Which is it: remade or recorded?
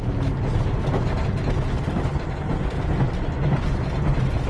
recorded